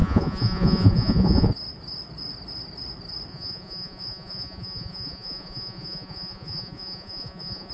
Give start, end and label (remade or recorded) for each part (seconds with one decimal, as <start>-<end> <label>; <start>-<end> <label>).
0.0-1.5 remade; 1.5-3.3 recorded; 3.3-7.7 remade